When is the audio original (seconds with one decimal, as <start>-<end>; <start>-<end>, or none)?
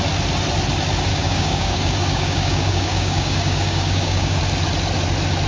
0.0-1.1; 4.4-5.5